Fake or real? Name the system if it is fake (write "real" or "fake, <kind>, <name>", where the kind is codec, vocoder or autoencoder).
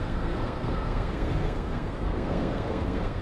fake, codec, SNAC